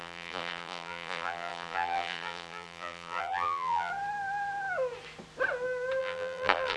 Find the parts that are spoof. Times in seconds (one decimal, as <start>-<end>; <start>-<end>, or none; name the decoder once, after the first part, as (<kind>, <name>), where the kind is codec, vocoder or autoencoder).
0.0-3.9 (vocoder, BigVGAN v2); 6.0-6.8